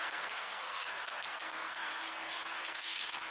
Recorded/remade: remade